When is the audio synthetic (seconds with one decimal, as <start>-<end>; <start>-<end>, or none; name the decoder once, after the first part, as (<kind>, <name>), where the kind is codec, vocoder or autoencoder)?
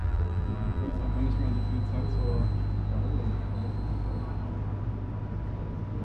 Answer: 0.0-1.0 (vocoder, BigVGAN v2)